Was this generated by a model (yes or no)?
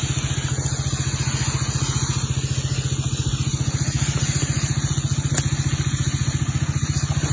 no